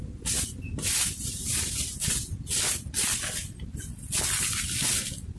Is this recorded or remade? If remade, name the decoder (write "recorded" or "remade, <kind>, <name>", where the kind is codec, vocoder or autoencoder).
recorded